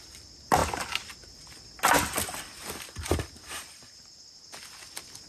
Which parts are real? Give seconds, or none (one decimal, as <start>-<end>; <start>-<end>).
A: 0.0-5.3

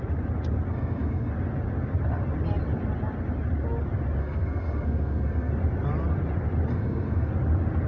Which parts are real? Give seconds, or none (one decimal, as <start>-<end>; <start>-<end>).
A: 0.0-0.7; 1.3-4.2; 5.5-6.7; 7.3-7.9

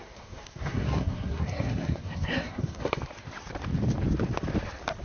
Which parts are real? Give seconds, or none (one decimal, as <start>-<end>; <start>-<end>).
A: 3.0-5.0

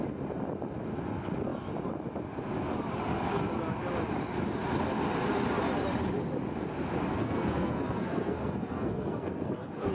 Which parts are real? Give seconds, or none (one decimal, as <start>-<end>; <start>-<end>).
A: 0.0-7.1

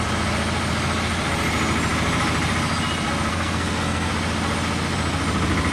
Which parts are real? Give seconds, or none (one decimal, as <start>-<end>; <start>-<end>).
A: 0.0-3.3; 4.1-5.7